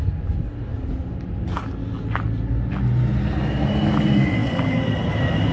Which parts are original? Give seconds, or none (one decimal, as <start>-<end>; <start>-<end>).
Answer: 0.0-5.5